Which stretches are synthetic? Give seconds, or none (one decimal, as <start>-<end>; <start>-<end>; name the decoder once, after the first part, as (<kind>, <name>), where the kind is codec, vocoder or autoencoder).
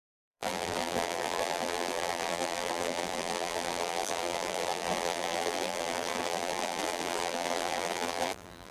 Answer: 0.0-8.7 (vocoder, BigVGAN v2)